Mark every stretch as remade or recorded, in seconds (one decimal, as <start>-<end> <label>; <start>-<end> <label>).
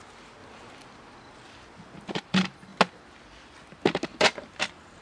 0.0-0.4 remade; 0.4-2.1 recorded; 2.1-2.7 remade; 2.7-4.2 recorded; 4.2-5.0 remade